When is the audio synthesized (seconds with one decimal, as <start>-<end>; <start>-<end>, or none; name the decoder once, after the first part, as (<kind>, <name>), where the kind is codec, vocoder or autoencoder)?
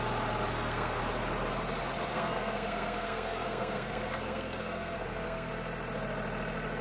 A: 0.5-1.0 (codec, SNAC); 2.1-5.5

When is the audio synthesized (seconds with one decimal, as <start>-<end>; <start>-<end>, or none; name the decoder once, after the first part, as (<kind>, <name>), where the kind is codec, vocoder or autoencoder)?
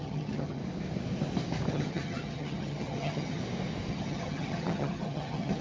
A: 0.0-0.6 (vocoder, HiFi-GAN); 1.7-3.4; 3.9-5.6